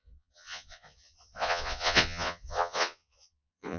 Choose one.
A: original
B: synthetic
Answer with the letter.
B